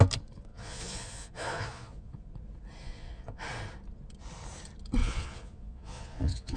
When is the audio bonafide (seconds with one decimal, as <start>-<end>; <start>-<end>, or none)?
0.0-0.5; 2.3-2.8; 3.4-5.0